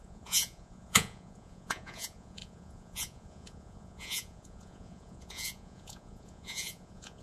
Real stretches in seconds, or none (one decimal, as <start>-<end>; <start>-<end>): none

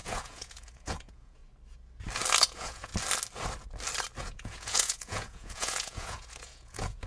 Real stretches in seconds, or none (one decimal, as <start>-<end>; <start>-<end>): 1.4-2.4; 2.9-4.2

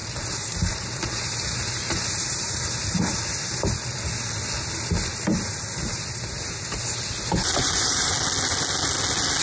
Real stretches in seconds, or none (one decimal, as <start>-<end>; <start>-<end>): 3.8-5.3; 8.1-9.4

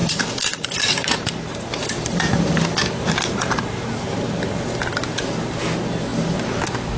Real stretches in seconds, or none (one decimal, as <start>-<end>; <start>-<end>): 4.2-7.0

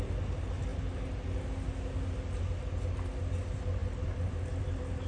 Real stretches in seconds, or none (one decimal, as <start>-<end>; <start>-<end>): 0.0-5.1